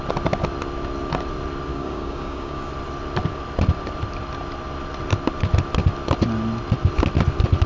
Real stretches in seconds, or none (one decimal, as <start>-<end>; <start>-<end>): 0.0-1.7; 2.7-7.7